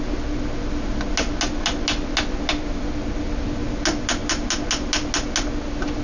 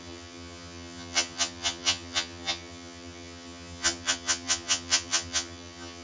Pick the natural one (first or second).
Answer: first